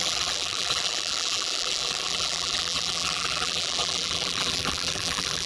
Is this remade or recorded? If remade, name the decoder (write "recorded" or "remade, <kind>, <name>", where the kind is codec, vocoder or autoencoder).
remade, vocoder, BigVGAN v2